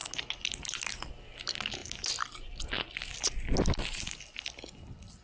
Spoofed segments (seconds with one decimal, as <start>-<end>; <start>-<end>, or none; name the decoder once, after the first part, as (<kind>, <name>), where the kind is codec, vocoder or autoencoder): none